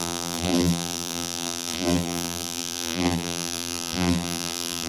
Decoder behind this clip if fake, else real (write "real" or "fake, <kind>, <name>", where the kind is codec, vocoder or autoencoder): fake, vocoder, BigVGAN v2